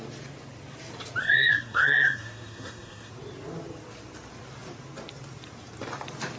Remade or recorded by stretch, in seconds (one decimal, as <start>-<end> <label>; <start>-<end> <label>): 0.0-1.2 recorded; 1.2-3.1 remade; 3.1-6.4 recorded